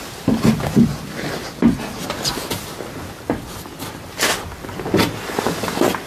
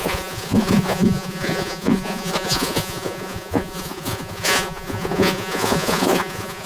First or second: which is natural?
first